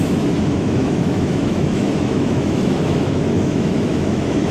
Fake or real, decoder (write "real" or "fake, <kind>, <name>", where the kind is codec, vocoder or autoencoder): fake, autoencoder, DAC-VAE